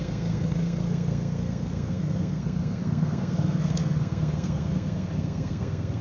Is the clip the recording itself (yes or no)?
no